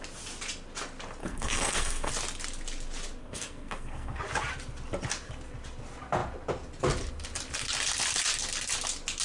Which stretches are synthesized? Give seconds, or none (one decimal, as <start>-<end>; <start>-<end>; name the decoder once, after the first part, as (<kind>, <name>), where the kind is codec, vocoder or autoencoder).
1.2-2.1 (codec, SNAC); 3.2-4.2